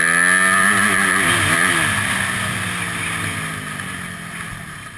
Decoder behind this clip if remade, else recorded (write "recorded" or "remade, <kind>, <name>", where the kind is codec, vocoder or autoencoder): recorded